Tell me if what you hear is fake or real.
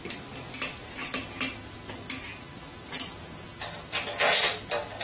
real